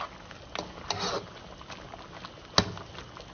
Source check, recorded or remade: recorded